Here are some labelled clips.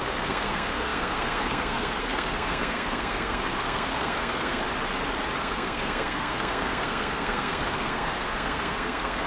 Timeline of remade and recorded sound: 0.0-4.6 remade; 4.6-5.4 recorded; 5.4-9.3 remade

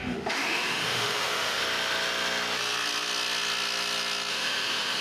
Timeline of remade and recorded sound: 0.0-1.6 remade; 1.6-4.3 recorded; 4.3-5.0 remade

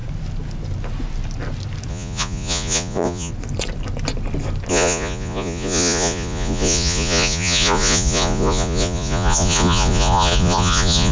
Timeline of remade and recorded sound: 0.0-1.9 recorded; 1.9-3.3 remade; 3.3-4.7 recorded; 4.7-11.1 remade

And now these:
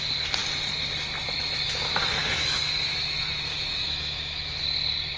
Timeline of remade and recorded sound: 0.0-2.2 recorded; 2.2-4.6 remade; 4.6-5.2 recorded

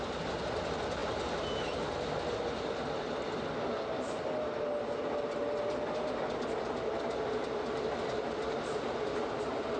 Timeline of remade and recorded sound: 0.0-9.8 recorded

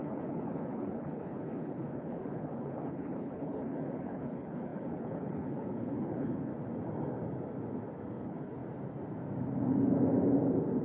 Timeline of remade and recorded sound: 0.0-6.5 remade; 6.5-8.1 recorded; 8.1-8.6 remade; 8.6-10.8 recorded

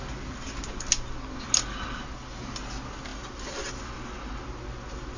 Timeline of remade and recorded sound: 0.0-5.2 recorded